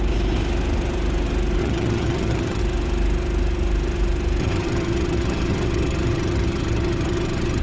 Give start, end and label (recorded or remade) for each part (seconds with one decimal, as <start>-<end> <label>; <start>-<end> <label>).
0.0-1.6 recorded; 1.6-2.6 remade; 2.6-4.4 recorded; 4.4-7.6 remade